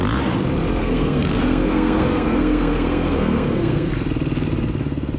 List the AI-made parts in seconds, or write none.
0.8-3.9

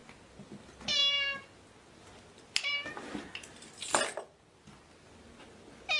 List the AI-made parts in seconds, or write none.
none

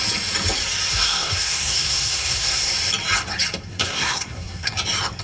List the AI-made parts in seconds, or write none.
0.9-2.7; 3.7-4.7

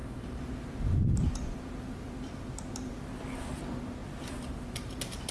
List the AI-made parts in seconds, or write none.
none

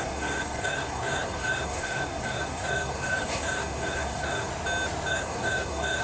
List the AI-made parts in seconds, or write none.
0.0-4.5; 5.1-6.0

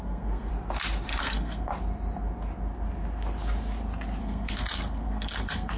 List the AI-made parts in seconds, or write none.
0.0-0.5; 1.2-1.7; 4.2-5.8

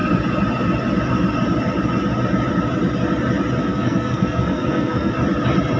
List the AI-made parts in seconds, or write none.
3.6-5.1

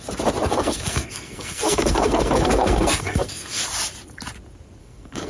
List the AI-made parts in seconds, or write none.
0.4-3.6; 4.8-5.3